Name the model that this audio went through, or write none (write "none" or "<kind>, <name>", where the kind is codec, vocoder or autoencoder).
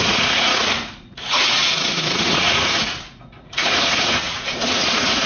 vocoder, Vocos